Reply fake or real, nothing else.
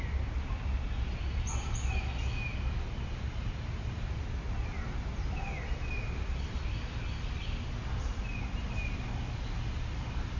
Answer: real